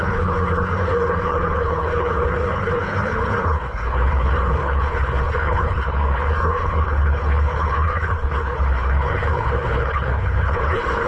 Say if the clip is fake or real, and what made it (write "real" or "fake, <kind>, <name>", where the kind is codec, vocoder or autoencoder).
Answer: fake, codec, HILCodec